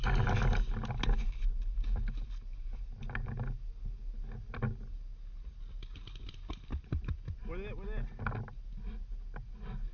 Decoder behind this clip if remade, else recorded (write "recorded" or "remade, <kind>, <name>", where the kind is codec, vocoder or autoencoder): recorded